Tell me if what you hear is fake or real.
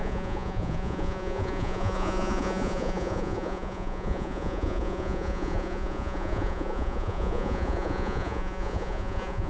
fake